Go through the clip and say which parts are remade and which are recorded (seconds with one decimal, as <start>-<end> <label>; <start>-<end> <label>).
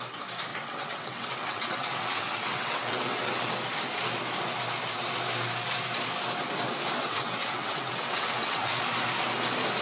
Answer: 0.0-0.5 recorded; 0.5-3.5 remade; 3.5-7.0 recorded; 7.0-8.8 remade; 8.8-9.8 recorded